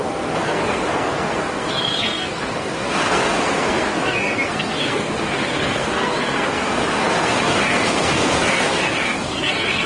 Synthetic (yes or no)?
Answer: yes